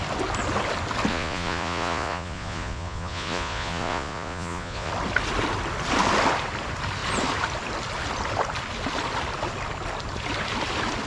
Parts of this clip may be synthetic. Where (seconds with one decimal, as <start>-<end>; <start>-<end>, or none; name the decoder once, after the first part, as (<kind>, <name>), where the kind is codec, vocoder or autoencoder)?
1.1-4.9 (vocoder, Vocos)